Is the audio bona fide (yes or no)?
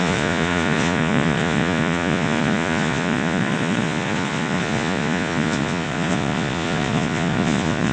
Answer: no